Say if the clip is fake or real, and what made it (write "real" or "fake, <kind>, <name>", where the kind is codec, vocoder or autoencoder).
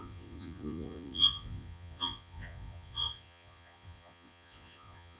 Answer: fake, vocoder, Vocos